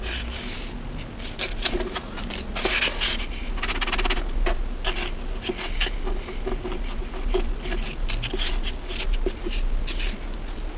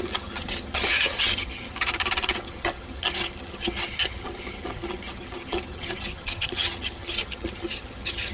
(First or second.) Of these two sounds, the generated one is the second